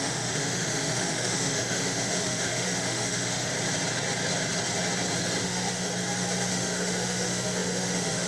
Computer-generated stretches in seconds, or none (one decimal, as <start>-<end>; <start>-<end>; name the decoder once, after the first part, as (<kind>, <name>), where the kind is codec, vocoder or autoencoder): 0.0-3.5 (autoencoder, DAC-VAE); 5.4-5.9; 6.5-8.3